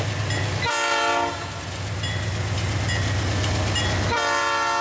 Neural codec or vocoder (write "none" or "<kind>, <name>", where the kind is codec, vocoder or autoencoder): none